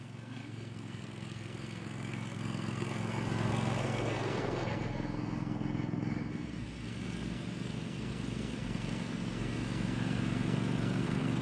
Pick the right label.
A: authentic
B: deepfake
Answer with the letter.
B